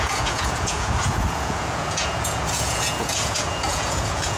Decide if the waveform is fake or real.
fake